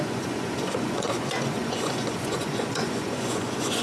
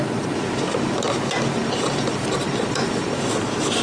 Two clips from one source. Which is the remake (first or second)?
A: first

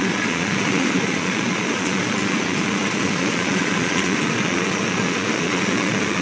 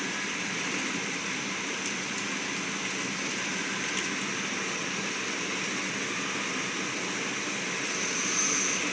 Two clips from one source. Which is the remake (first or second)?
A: first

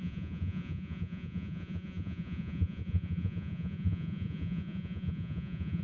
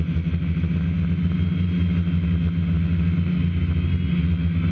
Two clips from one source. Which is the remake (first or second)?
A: first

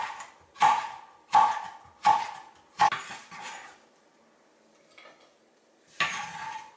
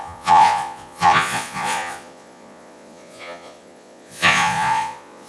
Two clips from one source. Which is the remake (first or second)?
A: second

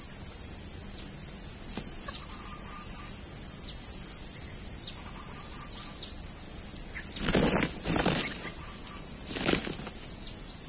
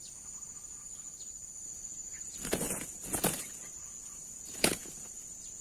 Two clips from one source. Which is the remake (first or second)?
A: second